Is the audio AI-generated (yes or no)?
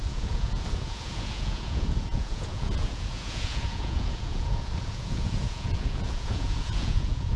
yes